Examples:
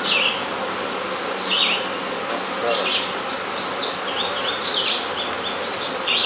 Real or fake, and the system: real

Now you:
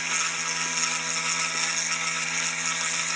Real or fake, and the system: real